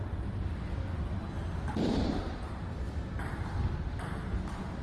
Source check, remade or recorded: remade